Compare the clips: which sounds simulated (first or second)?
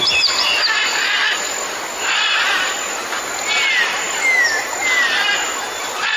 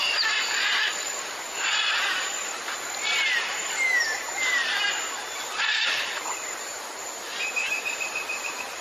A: second